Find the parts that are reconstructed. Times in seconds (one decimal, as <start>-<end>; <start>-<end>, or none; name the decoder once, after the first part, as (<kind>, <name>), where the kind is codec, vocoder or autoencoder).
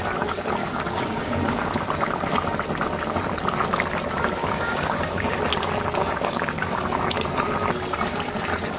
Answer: 0.6-1.9 (codec, DAC); 4.4-5.4; 6.0-7.0